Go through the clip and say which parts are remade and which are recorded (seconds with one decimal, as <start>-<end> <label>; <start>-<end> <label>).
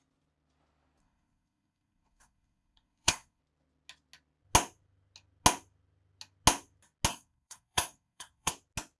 0.0-1.0 recorded; 1.0-3.4 remade; 3.4-7.1 recorded; 7.1-8.5 remade; 8.5-9.0 recorded